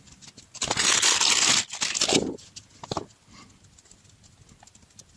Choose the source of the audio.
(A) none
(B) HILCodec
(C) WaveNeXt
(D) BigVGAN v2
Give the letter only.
A